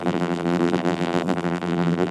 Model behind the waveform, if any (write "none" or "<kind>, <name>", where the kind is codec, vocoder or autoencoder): vocoder, BigVGAN v2